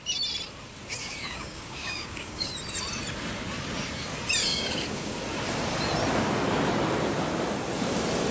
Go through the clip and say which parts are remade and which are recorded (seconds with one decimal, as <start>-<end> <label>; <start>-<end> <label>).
0.0-1.0 recorded; 1.0-2.5 remade; 2.5-4.4 recorded; 4.4-5.2 remade; 5.2-8.3 recorded

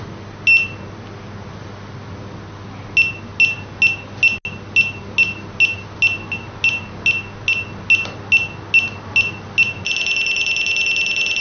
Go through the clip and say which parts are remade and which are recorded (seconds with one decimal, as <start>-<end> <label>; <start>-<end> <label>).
0.0-11.4 recorded